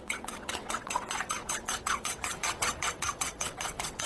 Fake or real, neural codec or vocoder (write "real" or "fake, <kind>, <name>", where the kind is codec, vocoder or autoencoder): fake, vocoder, WaveNeXt